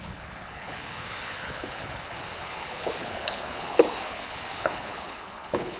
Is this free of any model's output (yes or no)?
no